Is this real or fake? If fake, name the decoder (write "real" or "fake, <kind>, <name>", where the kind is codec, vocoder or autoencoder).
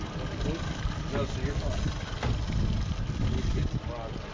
real